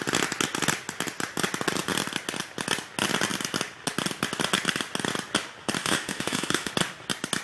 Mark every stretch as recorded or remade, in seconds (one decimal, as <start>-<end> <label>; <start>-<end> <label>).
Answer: 0.0-5.8 recorded; 5.8-6.7 remade; 6.7-7.4 recorded